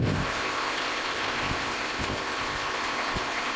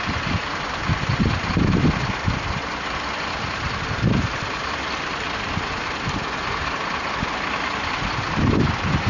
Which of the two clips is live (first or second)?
second